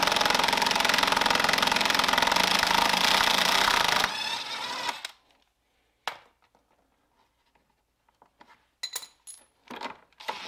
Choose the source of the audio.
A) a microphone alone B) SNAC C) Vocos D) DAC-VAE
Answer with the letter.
A